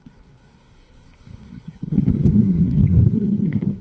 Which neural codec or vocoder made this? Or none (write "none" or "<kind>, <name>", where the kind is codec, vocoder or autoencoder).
codec, SNAC